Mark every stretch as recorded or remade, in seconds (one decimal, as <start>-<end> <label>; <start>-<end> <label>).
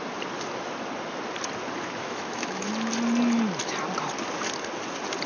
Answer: 0.0-2.0 recorded; 2.0-2.7 remade; 2.7-5.3 recorded